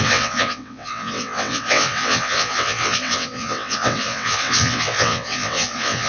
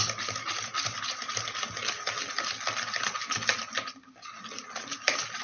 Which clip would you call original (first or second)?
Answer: second